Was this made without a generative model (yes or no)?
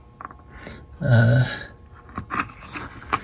yes